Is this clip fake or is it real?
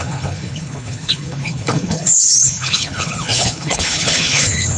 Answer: fake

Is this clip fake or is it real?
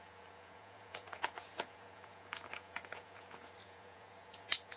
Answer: fake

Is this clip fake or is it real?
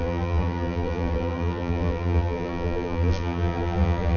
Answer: fake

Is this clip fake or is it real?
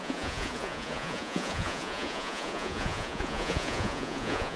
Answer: fake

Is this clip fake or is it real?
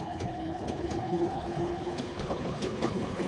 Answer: fake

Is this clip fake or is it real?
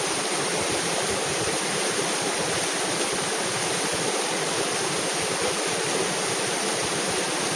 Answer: real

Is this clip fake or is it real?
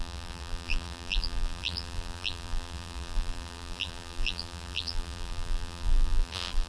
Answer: fake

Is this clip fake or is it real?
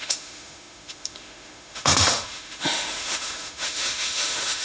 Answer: fake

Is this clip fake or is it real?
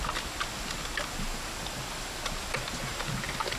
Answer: real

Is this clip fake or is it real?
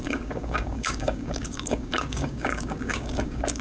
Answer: fake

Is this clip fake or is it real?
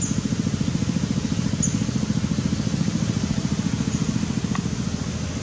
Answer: real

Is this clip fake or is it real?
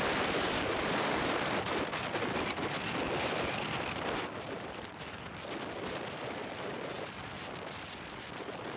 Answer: real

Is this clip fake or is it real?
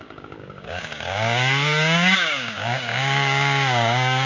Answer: fake